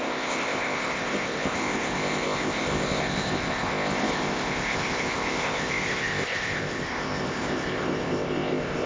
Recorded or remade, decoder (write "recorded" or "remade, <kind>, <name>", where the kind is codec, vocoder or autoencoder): remade, codec, ZipCodec